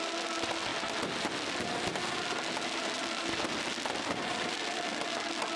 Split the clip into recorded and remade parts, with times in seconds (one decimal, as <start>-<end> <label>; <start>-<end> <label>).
0.0-5.6 recorded